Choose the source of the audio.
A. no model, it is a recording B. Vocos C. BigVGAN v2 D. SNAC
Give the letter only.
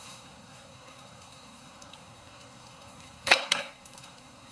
D